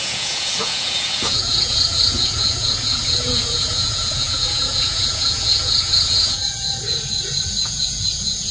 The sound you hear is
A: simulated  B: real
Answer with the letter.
A